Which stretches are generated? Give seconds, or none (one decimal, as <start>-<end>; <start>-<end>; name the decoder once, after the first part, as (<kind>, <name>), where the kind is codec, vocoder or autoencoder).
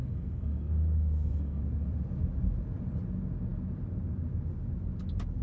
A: 0.0-1.6 (codec, SNAC)